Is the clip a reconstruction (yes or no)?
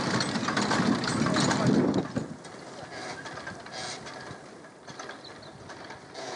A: no